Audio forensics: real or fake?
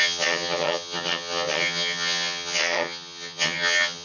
fake